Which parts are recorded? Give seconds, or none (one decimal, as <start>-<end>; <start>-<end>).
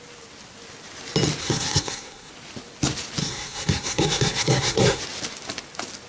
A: 0.0-1.4; 2.3-3.2; 5.0-6.1